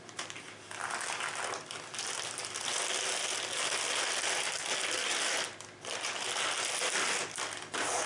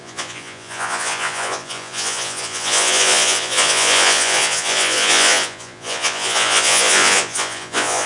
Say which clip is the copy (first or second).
second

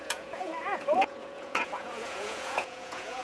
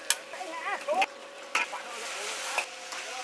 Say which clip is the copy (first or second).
first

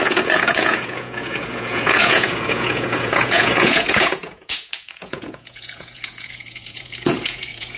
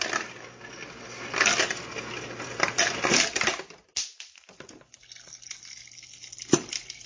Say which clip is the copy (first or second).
first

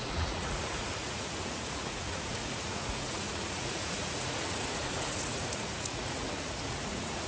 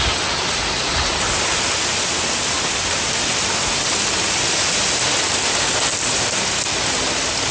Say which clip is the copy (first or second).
first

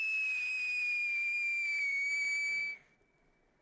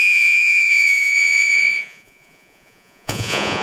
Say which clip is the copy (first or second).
second